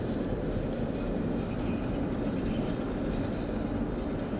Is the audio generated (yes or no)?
no